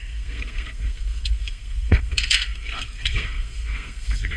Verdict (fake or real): fake